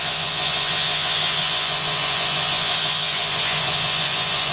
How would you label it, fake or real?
fake